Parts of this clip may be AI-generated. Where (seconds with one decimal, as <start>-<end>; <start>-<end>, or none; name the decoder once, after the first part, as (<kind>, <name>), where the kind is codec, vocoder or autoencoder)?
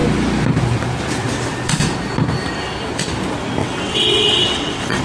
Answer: 3.6-5.0 (vocoder, WaveNeXt)